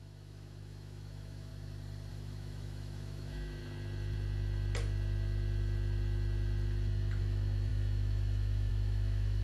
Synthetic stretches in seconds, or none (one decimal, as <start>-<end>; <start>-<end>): 0.0-1.5; 2.1-3.6; 7.2-9.4